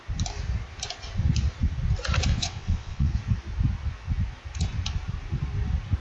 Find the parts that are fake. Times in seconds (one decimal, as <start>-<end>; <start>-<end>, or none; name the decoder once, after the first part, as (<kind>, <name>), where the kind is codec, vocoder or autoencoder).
2.3-3.1 (vocoder, WaveNeXt)